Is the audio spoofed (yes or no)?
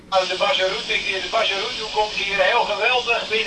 yes